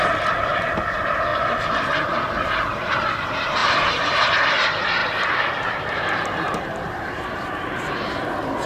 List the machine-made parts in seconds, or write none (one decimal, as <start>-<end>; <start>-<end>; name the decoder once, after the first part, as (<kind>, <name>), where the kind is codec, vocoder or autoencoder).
0.0-8.7 (vocoder, BigVGAN v2)